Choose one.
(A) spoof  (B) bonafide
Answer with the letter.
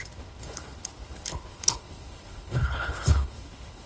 A